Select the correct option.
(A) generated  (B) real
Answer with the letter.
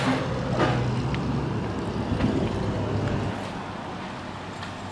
B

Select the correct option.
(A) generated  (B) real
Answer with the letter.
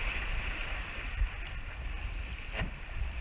B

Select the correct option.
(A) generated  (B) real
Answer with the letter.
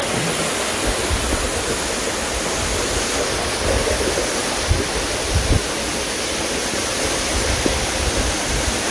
B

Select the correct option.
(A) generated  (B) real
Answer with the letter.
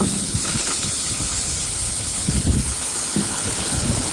A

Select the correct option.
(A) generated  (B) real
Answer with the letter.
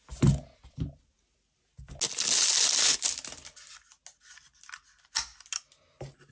B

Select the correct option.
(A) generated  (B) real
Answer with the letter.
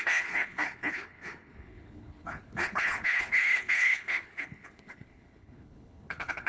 A